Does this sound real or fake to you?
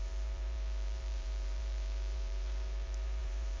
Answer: fake